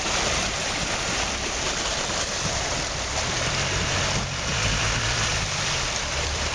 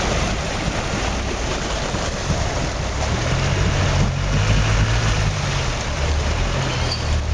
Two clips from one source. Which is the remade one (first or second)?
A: first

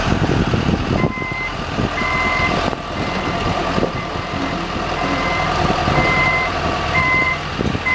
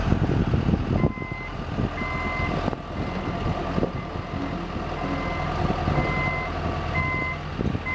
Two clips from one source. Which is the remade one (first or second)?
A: first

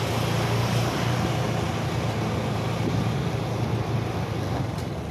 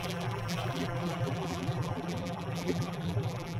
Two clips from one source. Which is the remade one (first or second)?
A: second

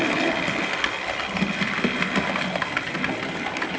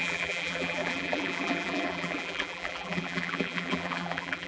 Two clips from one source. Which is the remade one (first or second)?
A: second